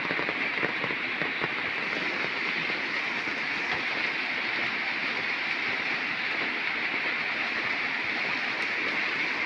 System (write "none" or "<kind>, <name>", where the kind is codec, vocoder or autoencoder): none